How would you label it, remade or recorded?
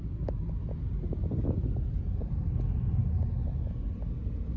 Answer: recorded